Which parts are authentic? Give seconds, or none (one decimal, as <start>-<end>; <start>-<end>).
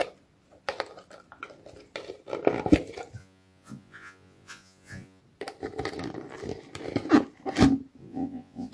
0.0-3.2; 5.2-8.0